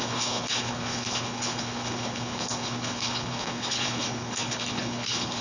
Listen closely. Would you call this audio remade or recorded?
remade